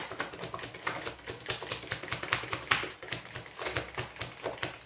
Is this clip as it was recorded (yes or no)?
yes